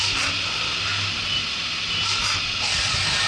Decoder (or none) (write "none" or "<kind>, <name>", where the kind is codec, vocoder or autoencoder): none